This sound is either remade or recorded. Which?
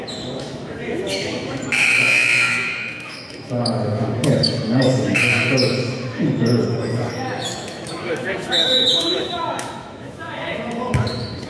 remade